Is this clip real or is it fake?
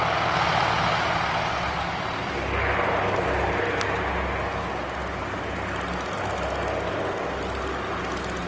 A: real